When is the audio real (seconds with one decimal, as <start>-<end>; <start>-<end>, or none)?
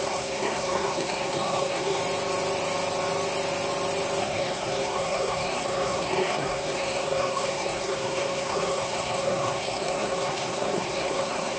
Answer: 2.0-4.2